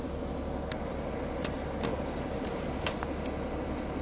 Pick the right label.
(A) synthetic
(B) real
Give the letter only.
B